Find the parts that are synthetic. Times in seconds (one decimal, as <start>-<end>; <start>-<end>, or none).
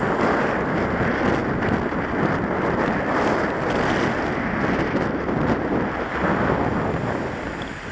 none